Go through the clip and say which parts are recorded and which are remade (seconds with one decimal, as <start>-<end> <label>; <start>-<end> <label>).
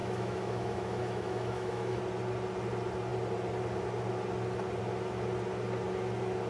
0.0-2.0 remade; 2.0-6.5 recorded